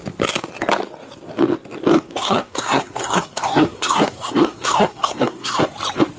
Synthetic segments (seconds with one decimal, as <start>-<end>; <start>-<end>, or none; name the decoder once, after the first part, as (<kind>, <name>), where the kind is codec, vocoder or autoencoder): 1.9-5.6 (codec, SNAC)